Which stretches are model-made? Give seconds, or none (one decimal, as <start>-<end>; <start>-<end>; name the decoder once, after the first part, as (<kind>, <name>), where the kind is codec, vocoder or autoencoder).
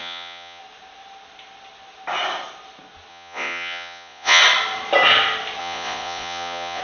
0.0-0.6 (vocoder, Vocos); 3.1-4.4; 5.6-6.8